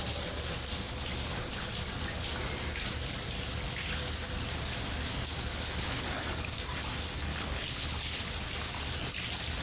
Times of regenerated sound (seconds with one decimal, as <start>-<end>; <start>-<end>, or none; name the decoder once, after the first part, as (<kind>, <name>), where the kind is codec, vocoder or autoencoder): 1.2-1.7 (codec, HILCodec); 5.5-6.2; 7.3-8.2